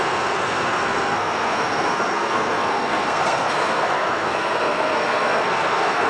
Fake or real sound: fake